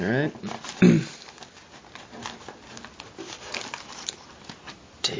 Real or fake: real